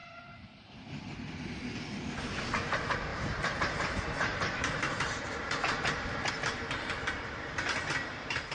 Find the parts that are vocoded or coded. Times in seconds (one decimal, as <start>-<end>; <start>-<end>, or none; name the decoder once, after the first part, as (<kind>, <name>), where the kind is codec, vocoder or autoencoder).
0.0-0.8 (vocoder, BigVGAN v2); 3.1-6.3